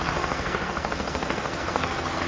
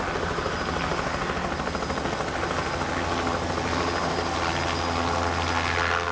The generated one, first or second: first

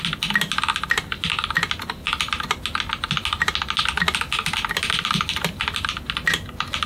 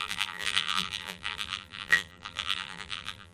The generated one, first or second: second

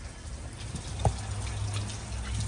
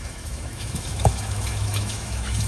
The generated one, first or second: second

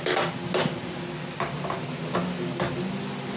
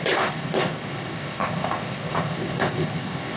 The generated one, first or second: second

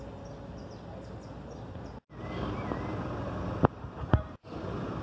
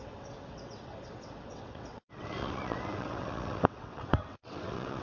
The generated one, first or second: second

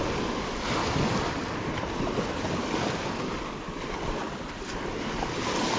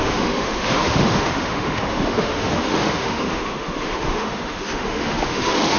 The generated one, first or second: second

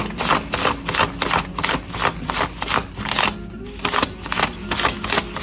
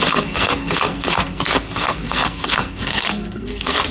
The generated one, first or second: second